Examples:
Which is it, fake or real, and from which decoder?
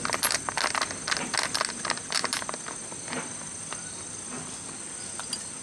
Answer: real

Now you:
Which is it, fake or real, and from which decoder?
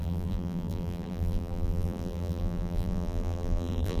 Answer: fake, vocoder, BigVGAN v2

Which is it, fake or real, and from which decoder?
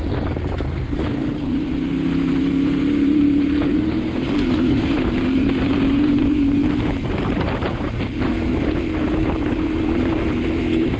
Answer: fake, vocoder, BigVGAN v2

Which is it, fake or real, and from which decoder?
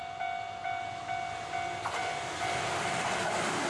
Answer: real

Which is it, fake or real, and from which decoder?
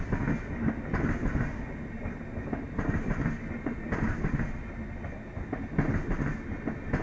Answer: real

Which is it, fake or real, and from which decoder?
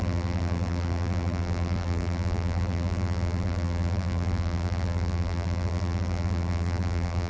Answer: fake, vocoder, BigVGAN v2